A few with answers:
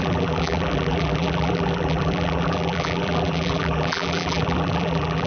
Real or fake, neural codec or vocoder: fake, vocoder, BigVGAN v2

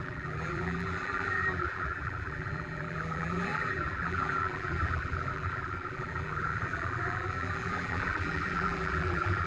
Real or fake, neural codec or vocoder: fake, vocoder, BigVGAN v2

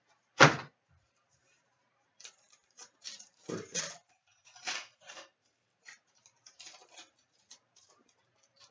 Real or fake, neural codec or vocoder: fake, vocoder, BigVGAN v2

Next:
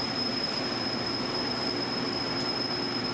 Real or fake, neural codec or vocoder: fake, vocoder, BigVGAN v2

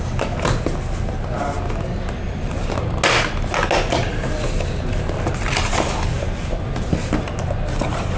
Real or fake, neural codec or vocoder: real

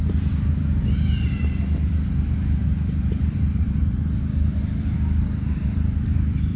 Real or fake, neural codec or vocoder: fake, vocoder, BigVGAN v2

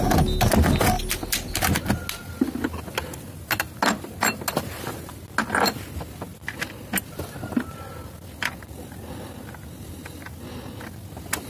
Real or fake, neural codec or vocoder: real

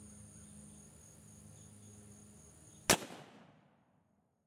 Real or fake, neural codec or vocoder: real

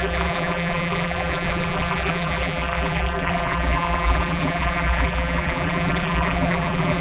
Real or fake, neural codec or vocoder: fake, vocoder, BigVGAN v2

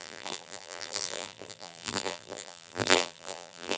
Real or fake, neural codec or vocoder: fake, vocoder, BigVGAN v2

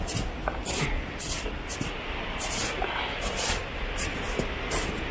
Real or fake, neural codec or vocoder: fake, vocoder, BigVGAN v2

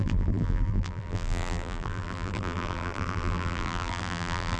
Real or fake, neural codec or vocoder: fake, vocoder, BigVGAN v2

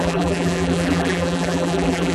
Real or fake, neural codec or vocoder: fake, vocoder, BigVGAN v2